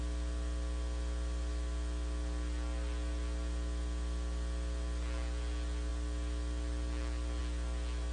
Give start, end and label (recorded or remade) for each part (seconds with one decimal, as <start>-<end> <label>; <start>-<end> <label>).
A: 0.0-8.1 recorded